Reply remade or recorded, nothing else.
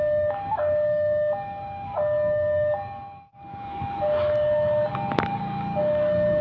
remade